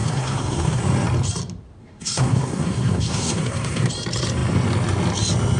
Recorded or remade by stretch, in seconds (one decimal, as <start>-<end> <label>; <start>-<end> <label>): 0.0-0.8 remade; 0.8-1.8 recorded; 1.8-3.9 remade; 3.9-5.6 recorded